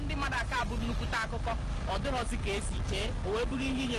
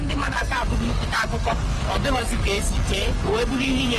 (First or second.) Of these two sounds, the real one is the first